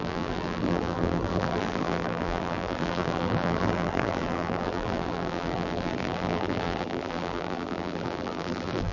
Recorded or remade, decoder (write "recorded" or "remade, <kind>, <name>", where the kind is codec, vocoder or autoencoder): remade, vocoder, BigVGAN v2